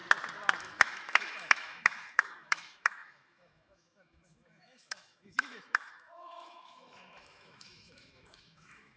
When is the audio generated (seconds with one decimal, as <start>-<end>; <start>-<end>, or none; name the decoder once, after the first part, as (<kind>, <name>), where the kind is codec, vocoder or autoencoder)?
0.6-9.0 (autoencoder, DAC-VAE)